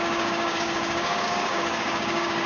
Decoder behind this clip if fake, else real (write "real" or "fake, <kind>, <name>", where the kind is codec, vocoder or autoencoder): fake, codec, DAC